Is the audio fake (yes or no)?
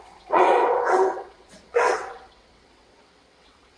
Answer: yes